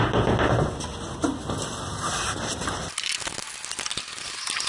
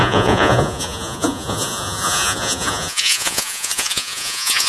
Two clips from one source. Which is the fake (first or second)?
second